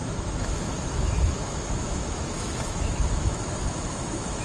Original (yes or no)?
no